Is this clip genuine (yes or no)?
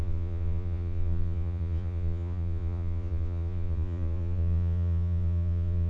no